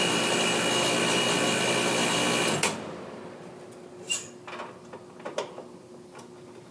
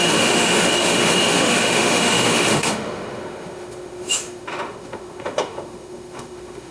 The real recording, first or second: first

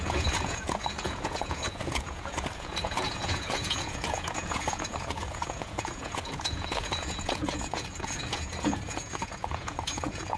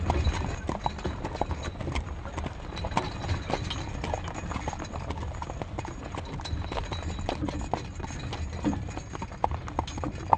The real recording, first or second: second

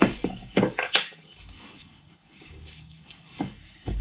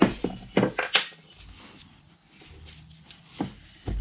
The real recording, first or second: second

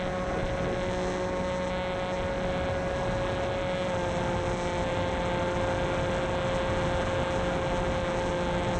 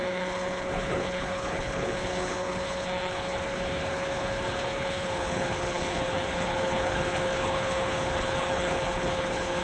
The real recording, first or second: first